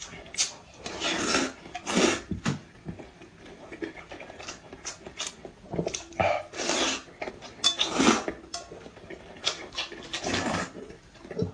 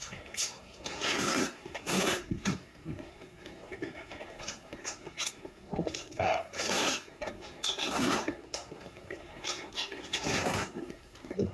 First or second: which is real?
first